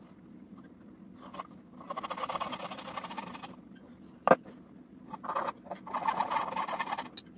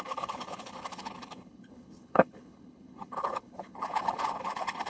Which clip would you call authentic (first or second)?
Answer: first